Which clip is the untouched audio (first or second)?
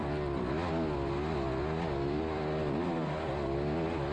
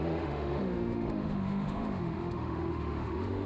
first